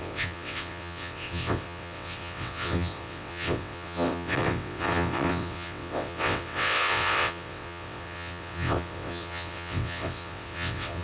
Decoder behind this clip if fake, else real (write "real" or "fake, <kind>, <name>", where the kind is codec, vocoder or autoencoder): fake, vocoder, WaveNeXt